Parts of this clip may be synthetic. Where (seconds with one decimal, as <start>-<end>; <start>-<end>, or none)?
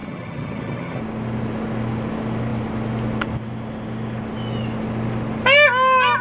0.0-1.0